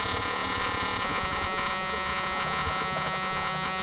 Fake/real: fake